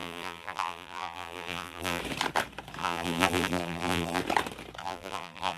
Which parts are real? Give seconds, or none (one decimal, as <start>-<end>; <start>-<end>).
2.0-2.8; 4.2-4.8